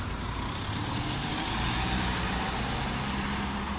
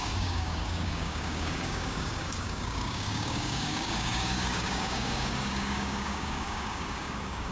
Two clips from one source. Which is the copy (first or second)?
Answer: second